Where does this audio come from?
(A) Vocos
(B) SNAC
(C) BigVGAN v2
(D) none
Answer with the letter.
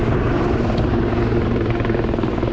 C